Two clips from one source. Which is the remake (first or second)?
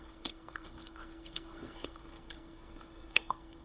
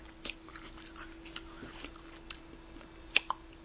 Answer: first